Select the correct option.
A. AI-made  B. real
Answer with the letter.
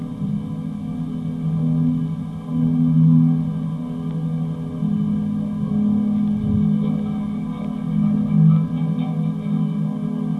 B